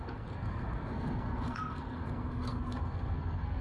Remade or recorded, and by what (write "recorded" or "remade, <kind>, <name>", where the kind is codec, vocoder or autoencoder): remade, codec, SNAC